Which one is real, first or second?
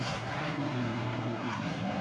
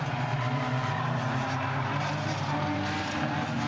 second